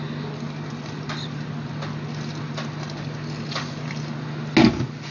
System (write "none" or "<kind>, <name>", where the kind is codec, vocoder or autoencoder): none